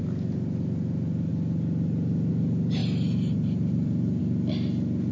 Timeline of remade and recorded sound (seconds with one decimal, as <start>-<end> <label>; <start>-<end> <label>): 0.0-2.8 recorded; 2.8-4.2 remade; 4.2-5.1 recorded